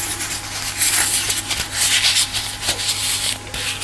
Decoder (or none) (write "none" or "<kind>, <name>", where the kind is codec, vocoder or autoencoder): none